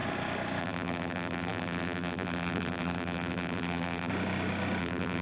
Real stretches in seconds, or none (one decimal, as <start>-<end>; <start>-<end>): 0.0-0.6; 4.1-4.8